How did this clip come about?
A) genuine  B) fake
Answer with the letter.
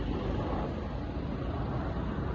A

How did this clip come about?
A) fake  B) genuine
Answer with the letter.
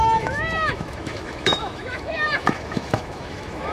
A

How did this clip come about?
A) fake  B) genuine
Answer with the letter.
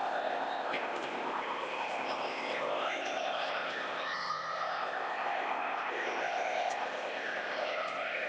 A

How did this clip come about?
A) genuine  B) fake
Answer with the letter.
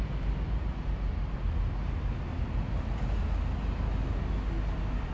A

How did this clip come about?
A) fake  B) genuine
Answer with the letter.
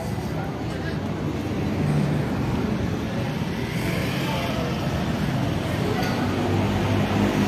B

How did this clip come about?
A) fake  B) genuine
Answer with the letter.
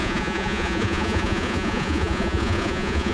A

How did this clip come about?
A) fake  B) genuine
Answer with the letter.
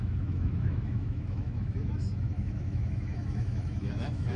A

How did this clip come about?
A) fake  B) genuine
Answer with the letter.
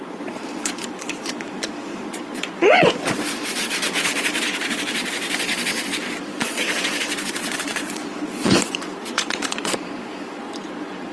A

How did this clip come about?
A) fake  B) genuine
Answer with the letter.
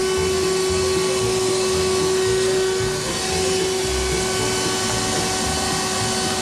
B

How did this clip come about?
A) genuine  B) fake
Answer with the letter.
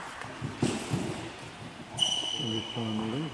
A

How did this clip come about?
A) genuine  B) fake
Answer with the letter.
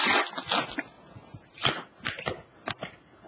A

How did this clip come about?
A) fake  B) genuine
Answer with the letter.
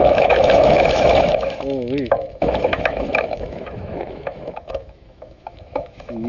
A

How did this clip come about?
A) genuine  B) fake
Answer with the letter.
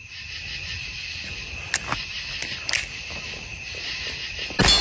A